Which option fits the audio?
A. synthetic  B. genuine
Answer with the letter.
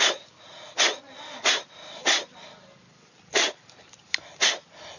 B